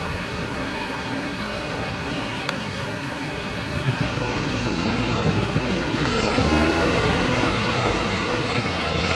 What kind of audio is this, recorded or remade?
remade